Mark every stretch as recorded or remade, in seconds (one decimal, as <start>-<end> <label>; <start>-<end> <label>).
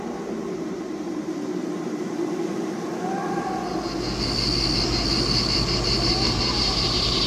0.0-1.7 remade; 1.7-6.1 recorded; 6.1-7.3 remade